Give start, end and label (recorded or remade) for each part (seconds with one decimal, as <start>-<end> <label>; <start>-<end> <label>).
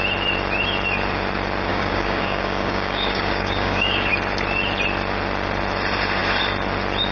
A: 0.0-1.7 recorded; 1.7-4.1 remade; 4.1-7.1 recorded